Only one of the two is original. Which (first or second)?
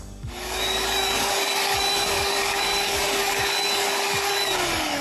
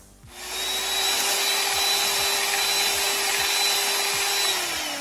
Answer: second